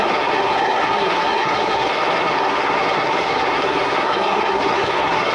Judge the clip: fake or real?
fake